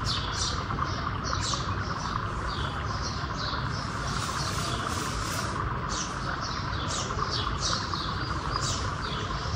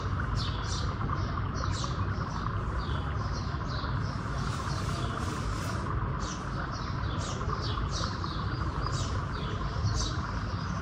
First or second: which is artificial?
first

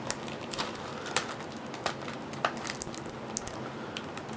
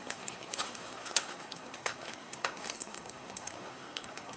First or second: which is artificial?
second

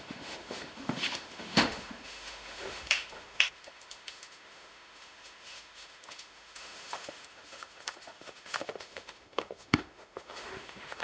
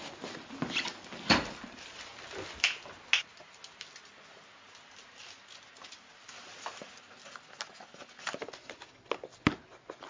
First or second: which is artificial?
first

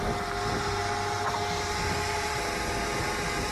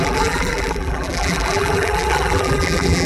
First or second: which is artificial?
second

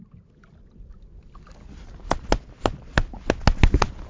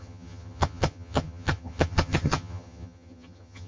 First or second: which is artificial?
second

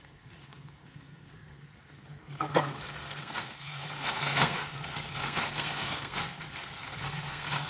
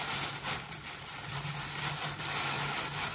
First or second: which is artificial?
first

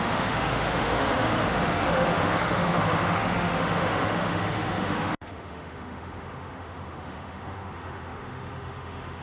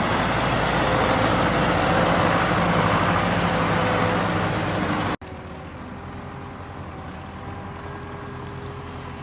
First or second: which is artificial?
first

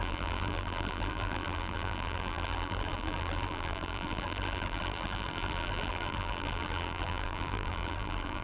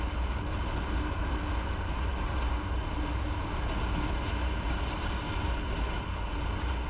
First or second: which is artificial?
first